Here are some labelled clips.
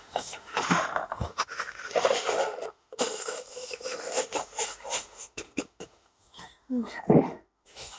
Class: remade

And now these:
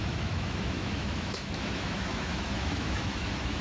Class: remade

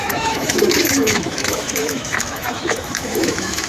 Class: remade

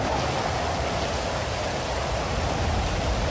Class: recorded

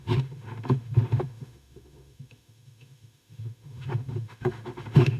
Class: remade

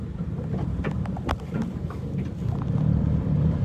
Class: recorded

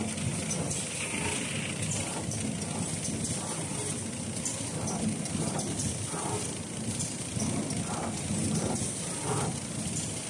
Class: recorded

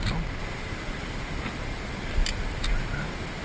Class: recorded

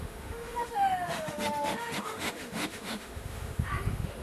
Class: remade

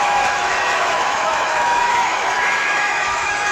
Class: remade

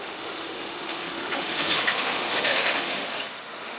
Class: remade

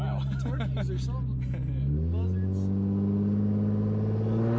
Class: recorded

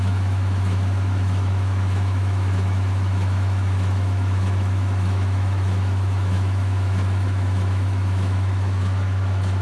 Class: remade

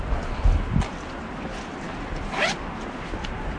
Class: recorded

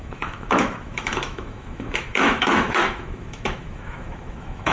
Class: remade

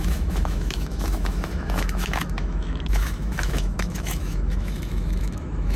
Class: remade